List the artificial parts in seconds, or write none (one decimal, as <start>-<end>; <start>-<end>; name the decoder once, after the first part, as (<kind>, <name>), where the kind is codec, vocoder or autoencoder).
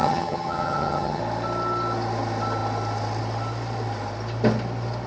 0.0-1.2 (vocoder, HiFi-GAN)